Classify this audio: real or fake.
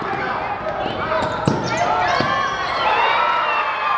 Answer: real